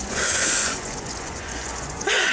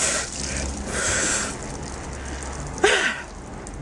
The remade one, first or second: first